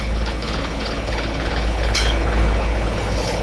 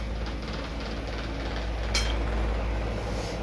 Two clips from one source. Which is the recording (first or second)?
second